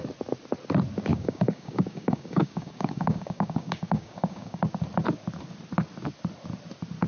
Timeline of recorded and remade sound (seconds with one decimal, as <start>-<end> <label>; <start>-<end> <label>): 0.0-1.1 recorded; 1.1-4.6 remade; 4.6-7.1 recorded

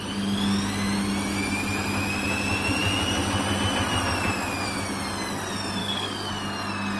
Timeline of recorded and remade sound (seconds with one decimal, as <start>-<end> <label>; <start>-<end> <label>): 0.0-5.8 recorded; 5.8-6.3 remade; 6.3-7.0 recorded

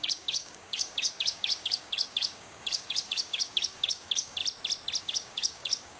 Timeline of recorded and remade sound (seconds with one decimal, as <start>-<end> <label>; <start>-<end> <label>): 0.0-4.4 remade; 4.4-5.0 recorded; 5.0-6.0 remade